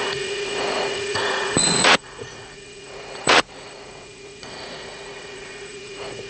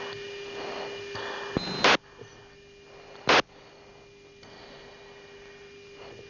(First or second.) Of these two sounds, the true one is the second